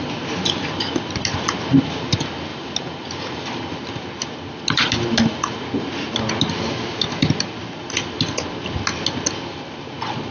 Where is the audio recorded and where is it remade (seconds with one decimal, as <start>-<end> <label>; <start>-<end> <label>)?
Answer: 0.0-2.5 recorded; 2.5-3.8 remade; 3.8-10.3 recorded